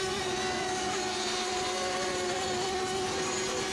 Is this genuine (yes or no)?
yes